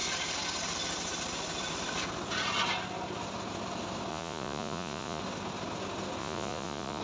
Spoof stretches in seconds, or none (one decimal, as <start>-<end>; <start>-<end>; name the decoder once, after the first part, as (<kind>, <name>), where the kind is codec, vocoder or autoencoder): 4.1-5.2 (vocoder, Vocos); 6.2-7.0